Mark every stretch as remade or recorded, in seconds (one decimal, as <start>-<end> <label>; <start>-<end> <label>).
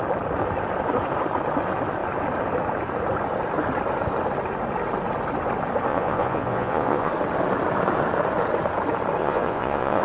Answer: 0.0-5.9 recorded; 5.9-7.1 remade; 7.1-9.2 recorded; 9.2-10.0 remade